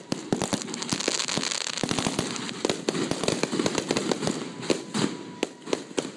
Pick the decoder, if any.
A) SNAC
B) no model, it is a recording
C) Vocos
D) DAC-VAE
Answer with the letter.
B